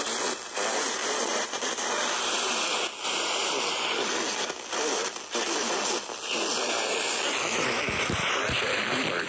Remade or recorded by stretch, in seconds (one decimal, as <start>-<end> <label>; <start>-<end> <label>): 0.0-1.0 recorded; 1.0-1.7 remade; 1.7-9.3 recorded